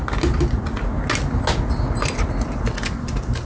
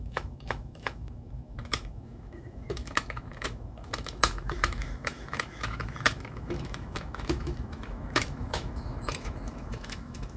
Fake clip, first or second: second